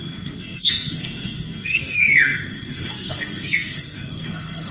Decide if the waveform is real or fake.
fake